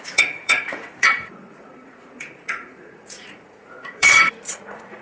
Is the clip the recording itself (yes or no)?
no